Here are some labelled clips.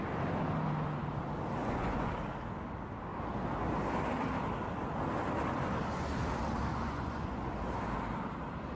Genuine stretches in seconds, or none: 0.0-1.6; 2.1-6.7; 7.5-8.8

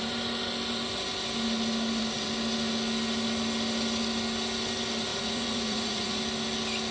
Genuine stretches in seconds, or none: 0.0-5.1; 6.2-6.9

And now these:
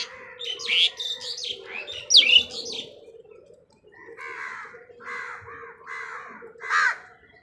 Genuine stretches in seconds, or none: 0.0-7.4